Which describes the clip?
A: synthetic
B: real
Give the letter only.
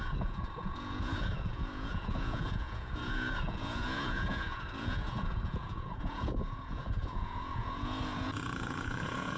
A